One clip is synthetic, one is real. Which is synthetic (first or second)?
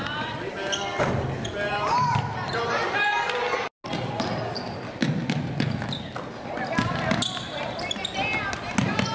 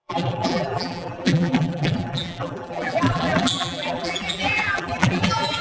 second